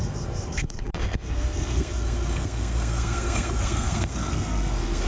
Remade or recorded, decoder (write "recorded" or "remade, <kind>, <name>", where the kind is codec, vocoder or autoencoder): remade, codec, SNAC